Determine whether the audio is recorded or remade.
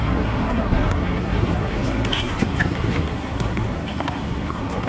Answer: remade